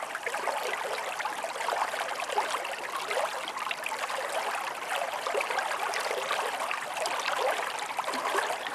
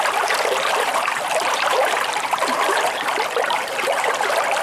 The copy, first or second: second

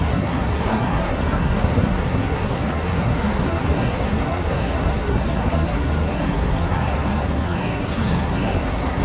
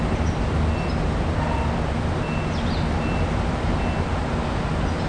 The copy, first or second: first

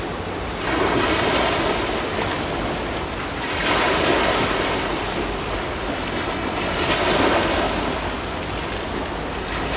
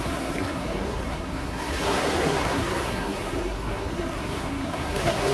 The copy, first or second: second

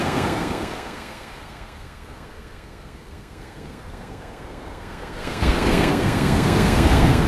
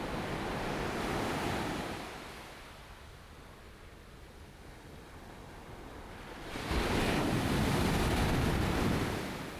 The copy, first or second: first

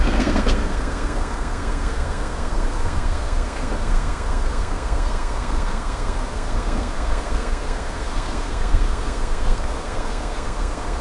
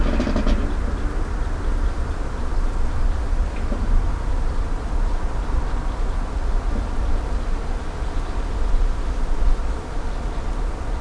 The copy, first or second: first